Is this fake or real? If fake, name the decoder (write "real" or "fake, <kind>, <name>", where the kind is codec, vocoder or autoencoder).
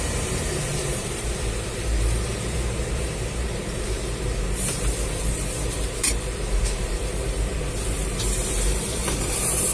fake, vocoder, BigVGAN v2